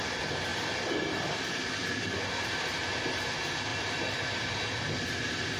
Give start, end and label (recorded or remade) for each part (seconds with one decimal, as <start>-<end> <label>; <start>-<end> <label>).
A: 0.0-0.5 recorded; 0.5-1.9 remade; 1.9-3.7 recorded; 3.7-4.6 remade; 4.6-5.6 recorded